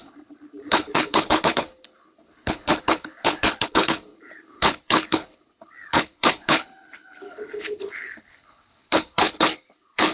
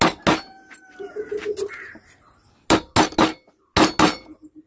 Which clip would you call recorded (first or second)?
second